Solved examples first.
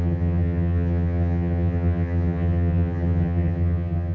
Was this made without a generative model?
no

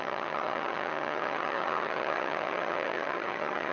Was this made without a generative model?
no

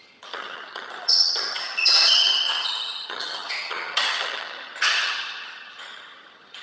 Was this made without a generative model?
no